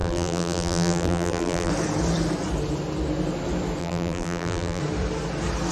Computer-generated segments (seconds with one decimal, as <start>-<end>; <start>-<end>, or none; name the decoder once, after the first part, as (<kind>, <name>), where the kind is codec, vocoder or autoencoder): 0.0-1.7 (vocoder, BigVGAN v2); 3.8-4.8

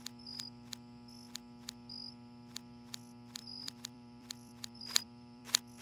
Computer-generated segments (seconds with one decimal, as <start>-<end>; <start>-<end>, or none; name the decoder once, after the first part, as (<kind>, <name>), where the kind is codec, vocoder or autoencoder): 3.4-5.8 (vocoder, BigVGAN v2)

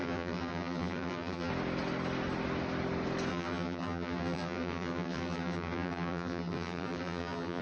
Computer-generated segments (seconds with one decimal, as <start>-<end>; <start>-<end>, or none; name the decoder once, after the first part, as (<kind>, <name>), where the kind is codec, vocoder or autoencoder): 0.0-1.5 (vocoder, BigVGAN v2); 3.3-7.6

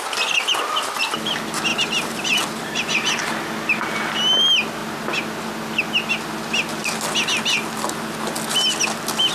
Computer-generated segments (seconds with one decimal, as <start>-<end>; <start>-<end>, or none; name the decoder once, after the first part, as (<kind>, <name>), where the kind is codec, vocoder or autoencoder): 1.7-3.2 (vocoder, BigVGAN v2)

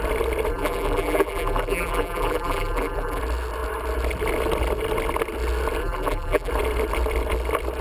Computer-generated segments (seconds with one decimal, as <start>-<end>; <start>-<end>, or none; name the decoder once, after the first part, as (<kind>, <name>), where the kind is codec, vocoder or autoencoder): 0.5-3.2 (vocoder, BigVGAN v2); 5.8-6.5

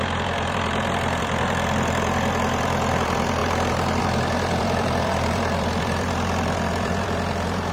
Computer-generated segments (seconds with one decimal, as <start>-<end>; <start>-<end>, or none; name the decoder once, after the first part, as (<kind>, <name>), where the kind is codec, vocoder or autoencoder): 0.0-7.7 (vocoder, BigVGAN v2)

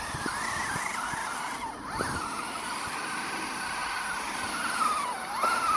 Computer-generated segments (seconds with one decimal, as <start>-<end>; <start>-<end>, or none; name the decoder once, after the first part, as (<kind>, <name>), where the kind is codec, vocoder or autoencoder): none